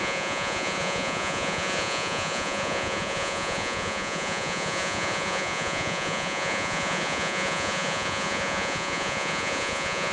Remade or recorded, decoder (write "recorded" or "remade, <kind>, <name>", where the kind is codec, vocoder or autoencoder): remade, vocoder, Vocos